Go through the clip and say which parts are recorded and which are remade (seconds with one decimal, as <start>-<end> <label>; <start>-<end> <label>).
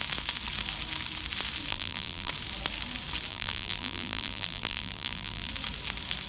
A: 0.0-1.7 recorded; 1.7-2.3 remade; 2.3-3.3 recorded; 3.3-5.5 remade; 5.5-6.3 recorded